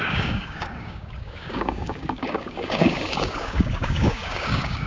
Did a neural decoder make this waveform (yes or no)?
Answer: yes